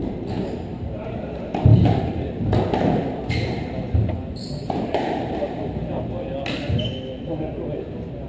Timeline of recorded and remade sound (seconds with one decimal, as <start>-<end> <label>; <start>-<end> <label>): 0.0-1.7 recorded; 1.7-2.3 remade; 2.3-4.6 recorded; 4.6-5.2 remade; 5.2-8.3 recorded